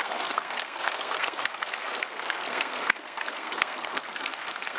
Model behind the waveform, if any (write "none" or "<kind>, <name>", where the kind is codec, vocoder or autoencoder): codec, SNAC